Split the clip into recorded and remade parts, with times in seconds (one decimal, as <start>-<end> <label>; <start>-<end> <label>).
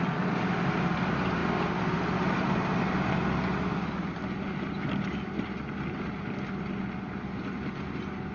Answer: 0.0-8.3 recorded